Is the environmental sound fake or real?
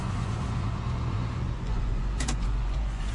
fake